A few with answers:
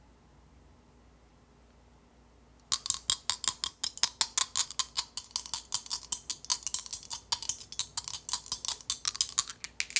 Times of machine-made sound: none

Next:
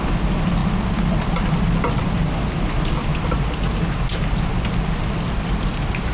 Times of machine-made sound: none

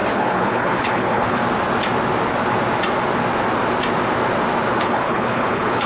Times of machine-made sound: 0.0-1.4 (codec, HILCodec); 4.7-5.9

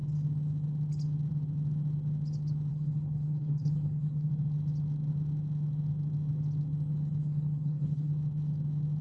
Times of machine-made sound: 2.7-4.3 (codec, HILCodec); 7.2-8.1

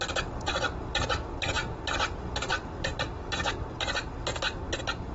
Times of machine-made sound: none